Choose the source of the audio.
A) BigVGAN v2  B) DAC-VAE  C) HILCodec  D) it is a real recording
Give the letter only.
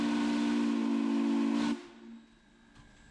D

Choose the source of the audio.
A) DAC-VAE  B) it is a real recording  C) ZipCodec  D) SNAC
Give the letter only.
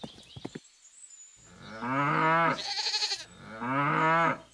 B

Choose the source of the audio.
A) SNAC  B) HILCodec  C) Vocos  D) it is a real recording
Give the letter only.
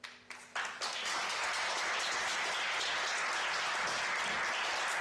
D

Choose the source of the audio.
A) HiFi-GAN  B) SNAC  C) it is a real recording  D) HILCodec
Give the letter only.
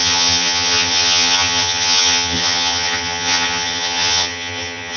A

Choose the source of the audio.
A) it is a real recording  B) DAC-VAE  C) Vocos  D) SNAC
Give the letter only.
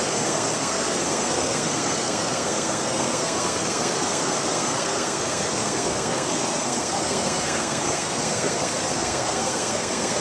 D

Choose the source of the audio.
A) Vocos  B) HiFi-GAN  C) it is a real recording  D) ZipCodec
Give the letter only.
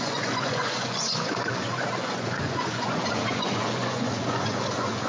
A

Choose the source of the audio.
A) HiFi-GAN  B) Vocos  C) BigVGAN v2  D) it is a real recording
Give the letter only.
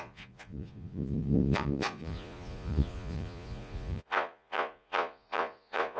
B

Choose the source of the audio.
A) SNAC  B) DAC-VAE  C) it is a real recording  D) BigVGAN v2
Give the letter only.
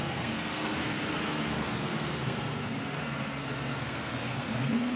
A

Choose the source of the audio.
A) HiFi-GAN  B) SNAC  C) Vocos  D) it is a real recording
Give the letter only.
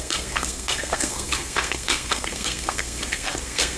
B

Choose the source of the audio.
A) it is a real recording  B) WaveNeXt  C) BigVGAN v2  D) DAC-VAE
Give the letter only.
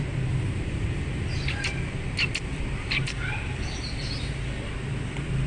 C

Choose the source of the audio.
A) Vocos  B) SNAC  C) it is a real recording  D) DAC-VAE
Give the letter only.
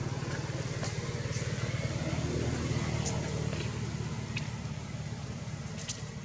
C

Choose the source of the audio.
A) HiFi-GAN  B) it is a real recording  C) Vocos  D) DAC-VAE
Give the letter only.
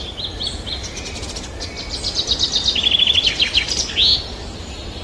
B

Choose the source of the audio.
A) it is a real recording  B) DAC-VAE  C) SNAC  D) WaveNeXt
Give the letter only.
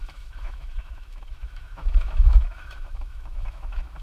B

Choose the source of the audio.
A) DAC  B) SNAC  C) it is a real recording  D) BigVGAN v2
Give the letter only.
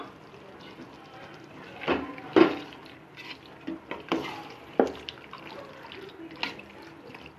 C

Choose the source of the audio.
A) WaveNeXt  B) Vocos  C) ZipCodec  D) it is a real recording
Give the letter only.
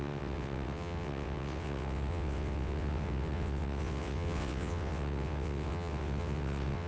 A